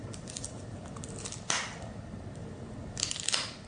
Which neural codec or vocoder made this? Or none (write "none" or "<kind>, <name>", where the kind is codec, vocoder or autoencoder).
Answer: none